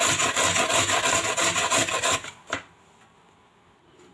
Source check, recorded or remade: recorded